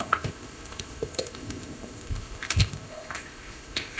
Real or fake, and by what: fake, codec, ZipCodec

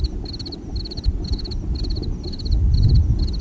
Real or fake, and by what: real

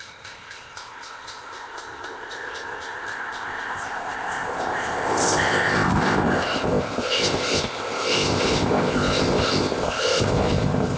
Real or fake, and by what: fake, codec, ZipCodec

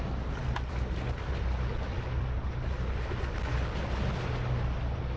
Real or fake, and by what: real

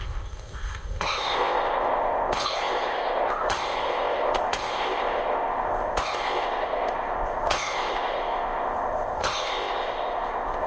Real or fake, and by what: fake, codec, ZipCodec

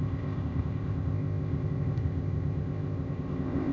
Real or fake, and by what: fake, codec, ZipCodec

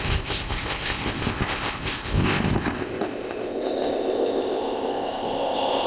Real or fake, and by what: fake, codec, ZipCodec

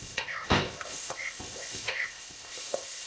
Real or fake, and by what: fake, codec, ZipCodec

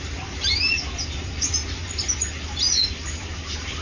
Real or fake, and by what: real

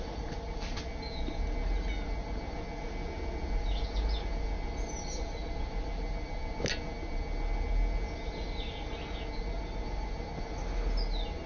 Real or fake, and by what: real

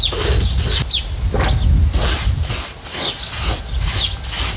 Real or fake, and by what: real